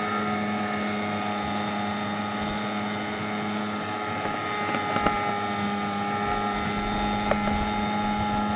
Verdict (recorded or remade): recorded